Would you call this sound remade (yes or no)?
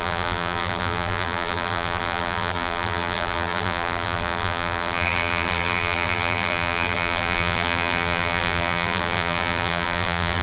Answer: yes